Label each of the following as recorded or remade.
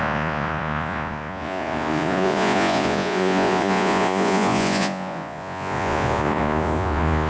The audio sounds remade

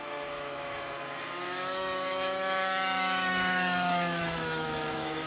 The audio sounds remade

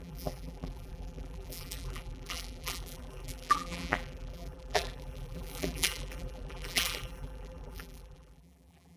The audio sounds remade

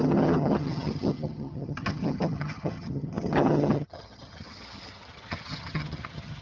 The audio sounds remade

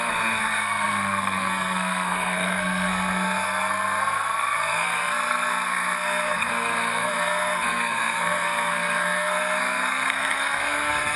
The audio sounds remade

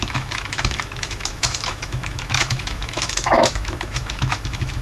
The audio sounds remade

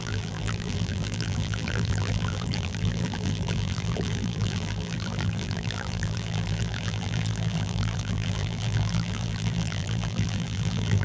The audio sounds remade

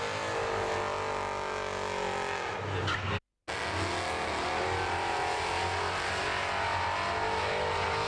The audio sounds recorded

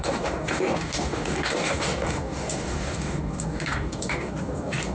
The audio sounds remade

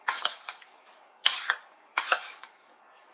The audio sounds remade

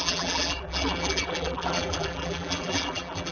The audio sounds remade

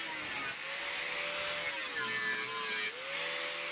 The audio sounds recorded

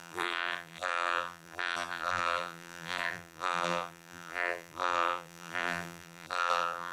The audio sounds remade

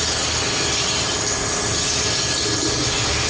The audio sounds recorded